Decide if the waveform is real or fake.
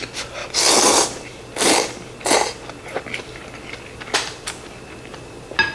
real